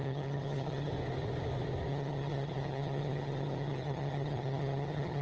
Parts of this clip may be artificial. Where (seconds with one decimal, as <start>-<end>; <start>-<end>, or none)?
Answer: 0.0-0.9; 1.9-5.2